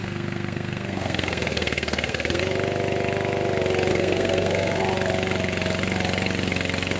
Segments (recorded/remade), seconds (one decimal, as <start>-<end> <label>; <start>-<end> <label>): 0.0-2.4 remade; 2.4-3.9 recorded; 3.9-4.8 remade; 4.8-7.0 recorded